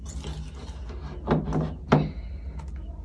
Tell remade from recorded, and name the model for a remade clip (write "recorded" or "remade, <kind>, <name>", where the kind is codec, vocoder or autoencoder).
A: recorded